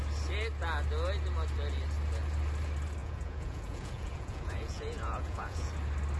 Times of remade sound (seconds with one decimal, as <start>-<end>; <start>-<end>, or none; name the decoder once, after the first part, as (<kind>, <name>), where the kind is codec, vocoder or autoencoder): 3.0-5.7 (vocoder, Vocos)